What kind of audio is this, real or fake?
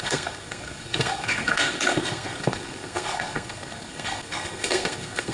fake